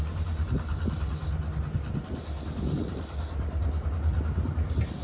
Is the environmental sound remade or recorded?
recorded